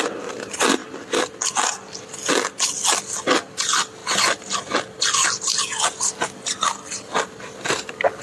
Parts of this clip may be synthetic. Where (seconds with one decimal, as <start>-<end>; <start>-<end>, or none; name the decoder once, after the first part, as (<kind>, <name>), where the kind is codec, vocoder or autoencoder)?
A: none